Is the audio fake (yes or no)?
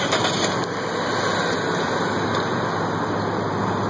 no